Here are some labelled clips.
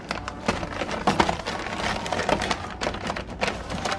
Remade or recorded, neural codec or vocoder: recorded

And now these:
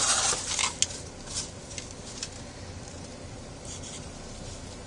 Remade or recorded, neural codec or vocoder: recorded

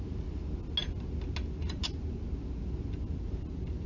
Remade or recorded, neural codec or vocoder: recorded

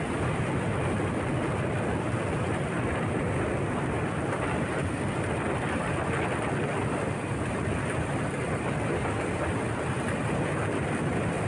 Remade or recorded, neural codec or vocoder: recorded